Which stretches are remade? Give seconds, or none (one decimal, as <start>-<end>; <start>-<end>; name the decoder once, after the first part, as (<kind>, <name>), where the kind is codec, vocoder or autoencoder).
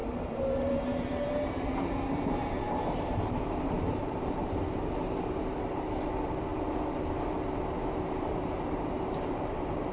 0.0-5.4 (vocoder, BigVGAN v2); 6.0-6.5; 7.9-9.9